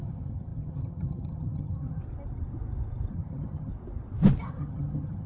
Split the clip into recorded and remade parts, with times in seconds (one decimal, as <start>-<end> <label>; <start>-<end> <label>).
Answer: 0.0-2.0 remade; 2.0-3.1 recorded; 3.1-3.7 remade; 3.7-4.4 recorded; 4.4-5.3 remade